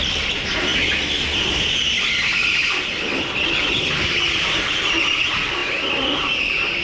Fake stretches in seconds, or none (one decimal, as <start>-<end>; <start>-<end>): none